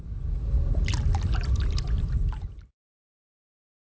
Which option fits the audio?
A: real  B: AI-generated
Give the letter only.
A